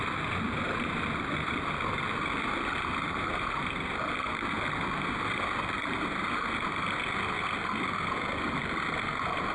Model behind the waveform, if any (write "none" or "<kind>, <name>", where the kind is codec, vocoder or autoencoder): vocoder, BigVGAN v2